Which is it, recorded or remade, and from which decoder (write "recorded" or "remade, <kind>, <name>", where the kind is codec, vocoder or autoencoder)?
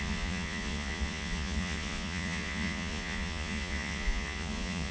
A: remade, vocoder, Vocos